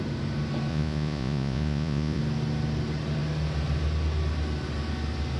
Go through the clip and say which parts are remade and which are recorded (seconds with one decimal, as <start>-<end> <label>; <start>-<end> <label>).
0.0-0.7 recorded; 0.7-2.2 remade; 2.2-5.4 recorded